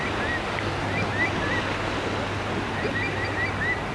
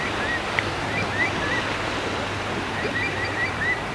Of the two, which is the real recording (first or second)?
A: first